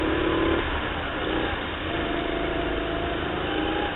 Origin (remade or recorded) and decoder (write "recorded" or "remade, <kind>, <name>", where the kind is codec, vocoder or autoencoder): recorded